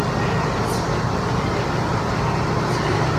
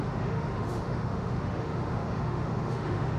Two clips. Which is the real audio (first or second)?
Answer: first